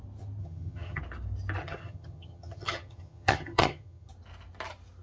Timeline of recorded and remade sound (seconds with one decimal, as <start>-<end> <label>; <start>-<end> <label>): 0.0-0.4 recorded; 0.4-1.0 remade; 1.0-1.6 recorded; 1.6-4.1 remade; 4.1-5.0 recorded